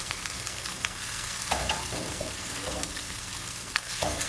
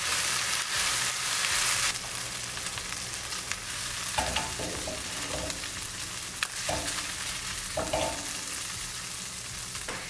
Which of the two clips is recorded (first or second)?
second